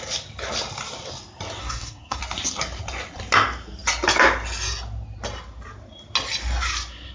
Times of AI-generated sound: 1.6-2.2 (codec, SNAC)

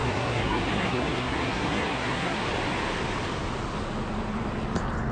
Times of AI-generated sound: 0.0-2.5 (codec, SNAC)

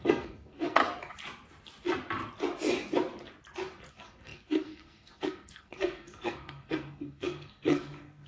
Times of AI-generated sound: 0.0-0.8 (codec, SNAC); 3.9-8.3

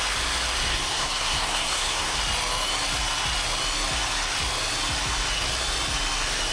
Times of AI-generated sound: 0.7-2.2 (codec, SNAC)

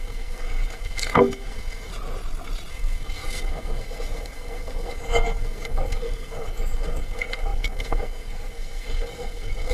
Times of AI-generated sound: 0.0-1.9 (codec, SNAC); 2.7-9.7

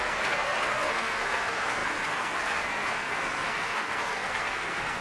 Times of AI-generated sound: 0.0-5.0 (codec, SNAC)